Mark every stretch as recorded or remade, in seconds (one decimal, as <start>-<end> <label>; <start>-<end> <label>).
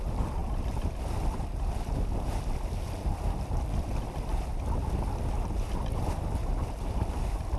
0.0-4.5 remade; 4.5-7.1 recorded; 7.1-7.6 remade